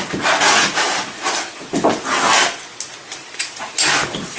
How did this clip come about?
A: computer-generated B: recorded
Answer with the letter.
B